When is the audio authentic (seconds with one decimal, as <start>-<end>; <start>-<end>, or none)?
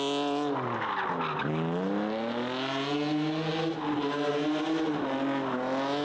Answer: 0.0-6.0